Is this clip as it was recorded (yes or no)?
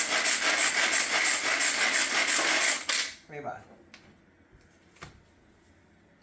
yes